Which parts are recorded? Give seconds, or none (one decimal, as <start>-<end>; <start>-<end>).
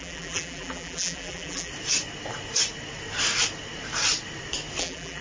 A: 1.7-4.8